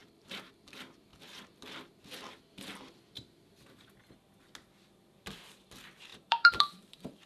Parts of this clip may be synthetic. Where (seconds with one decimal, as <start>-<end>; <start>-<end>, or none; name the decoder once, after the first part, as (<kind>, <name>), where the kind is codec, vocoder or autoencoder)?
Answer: 0.0-0.5 (vocoder, BigVGAN v2); 6.1-7.3